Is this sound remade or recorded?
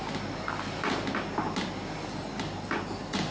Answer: recorded